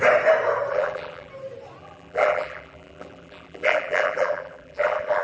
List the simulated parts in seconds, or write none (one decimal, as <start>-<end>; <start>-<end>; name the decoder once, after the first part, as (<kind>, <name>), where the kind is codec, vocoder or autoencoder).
0.7-1.3 (vocoder, BigVGAN v2); 1.8-5.2